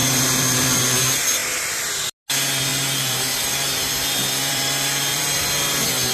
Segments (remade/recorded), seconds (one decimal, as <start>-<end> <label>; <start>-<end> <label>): 0.0-0.8 remade; 0.8-1.4 recorded; 1.4-1.9 remade; 1.9-2.7 recorded; 2.7-5.4 remade; 5.4-6.1 recorded